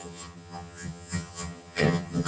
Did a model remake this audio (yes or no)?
yes